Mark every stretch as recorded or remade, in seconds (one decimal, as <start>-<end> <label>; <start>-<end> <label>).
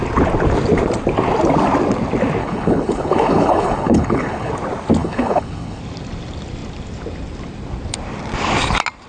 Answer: 0.0-2.4 recorded; 2.4-4.5 remade; 4.5-5.0 recorded; 5.0-5.8 remade; 5.8-9.1 recorded